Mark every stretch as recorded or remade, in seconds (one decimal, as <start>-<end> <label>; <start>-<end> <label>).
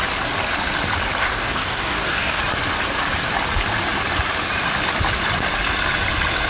0.0-1.2 recorded; 1.2-2.4 remade; 2.4-6.5 recorded